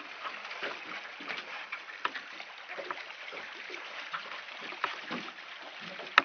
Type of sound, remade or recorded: recorded